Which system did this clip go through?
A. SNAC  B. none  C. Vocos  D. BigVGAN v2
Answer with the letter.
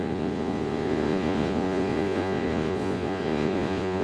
C